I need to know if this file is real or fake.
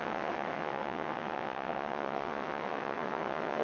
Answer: fake